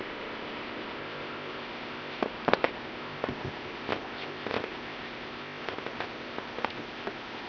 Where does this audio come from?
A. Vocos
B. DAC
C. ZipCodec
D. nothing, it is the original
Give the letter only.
C